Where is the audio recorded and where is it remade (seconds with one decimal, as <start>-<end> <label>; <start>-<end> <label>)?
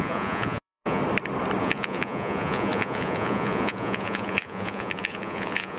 0.0-1.0 remade; 1.0-1.6 recorded; 1.6-5.8 remade